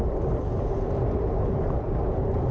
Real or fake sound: real